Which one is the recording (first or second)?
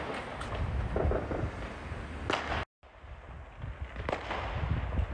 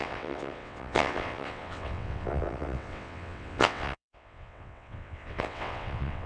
first